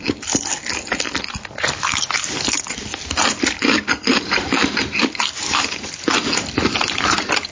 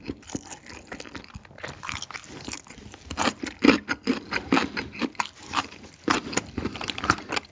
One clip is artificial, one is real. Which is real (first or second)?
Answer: second